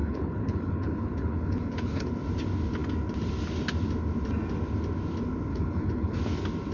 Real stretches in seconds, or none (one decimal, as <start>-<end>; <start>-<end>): 2.1-5.5; 6.2-6.7